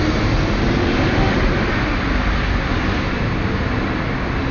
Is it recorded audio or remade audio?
recorded